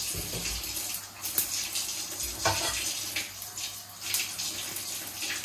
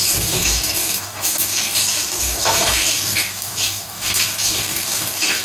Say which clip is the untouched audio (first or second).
first